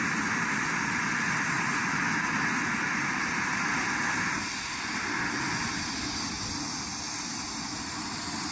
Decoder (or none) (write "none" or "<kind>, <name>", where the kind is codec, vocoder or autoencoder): none